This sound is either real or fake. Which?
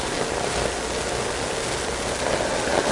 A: real